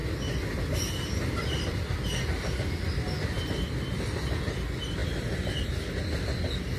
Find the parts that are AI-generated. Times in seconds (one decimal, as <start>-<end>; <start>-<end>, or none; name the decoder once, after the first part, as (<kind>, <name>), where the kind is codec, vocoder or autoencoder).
none